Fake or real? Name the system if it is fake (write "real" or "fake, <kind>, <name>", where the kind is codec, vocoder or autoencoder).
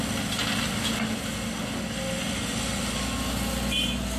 real